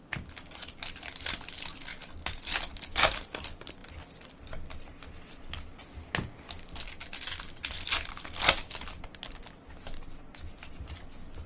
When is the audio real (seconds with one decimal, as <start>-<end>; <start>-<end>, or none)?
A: 0.0-11.5